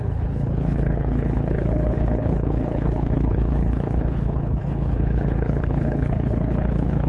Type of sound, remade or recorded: remade